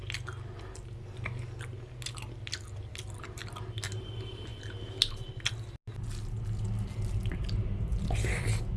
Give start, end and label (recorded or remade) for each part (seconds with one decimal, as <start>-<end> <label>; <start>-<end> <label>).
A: 0.0-8.8 recorded